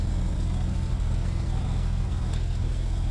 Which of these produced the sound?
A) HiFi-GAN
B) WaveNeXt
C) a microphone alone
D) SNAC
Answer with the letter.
D